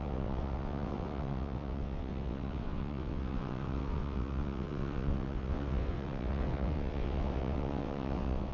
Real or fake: fake